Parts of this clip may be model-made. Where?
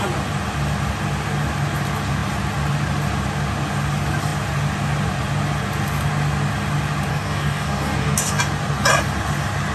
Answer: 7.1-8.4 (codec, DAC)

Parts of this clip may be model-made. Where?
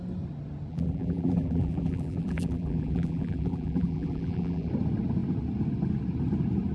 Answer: 0.7-4.7 (vocoder, BigVGAN v2)